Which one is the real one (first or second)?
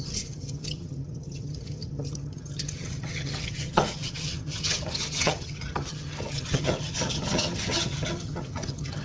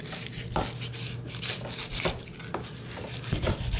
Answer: second